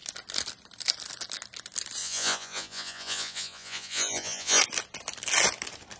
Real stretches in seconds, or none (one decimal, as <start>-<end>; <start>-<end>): 0.0-2.0; 4.6-6.0